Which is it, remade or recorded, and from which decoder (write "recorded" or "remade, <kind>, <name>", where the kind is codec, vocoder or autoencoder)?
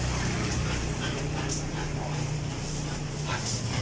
recorded